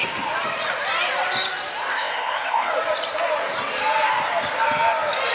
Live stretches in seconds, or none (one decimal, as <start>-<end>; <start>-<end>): 0.0-1.9; 2.7-5.3

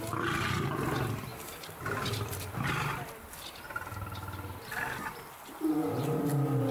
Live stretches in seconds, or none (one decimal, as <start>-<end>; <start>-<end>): 0.0-6.7

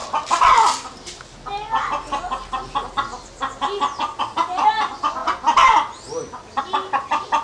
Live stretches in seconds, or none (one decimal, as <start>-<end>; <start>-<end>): 0.0-7.4